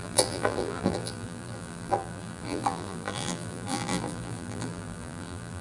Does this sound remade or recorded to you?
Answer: remade